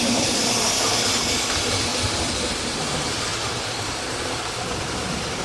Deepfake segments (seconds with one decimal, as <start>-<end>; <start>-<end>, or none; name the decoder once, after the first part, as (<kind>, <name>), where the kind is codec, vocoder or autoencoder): 0.0-1.9 (vocoder, BigVGAN v2); 2.9-3.3; 3.8-5.4